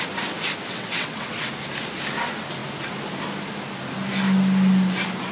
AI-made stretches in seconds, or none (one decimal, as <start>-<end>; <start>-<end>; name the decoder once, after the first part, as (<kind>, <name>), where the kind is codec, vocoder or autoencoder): 0.7-1.5 (vocoder, WaveNeXt)